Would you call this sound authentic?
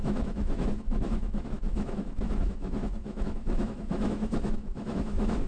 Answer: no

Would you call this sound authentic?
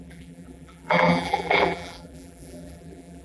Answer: no